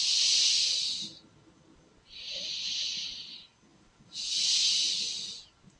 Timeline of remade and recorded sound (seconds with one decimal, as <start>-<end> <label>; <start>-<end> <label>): 0.0-5.8 recorded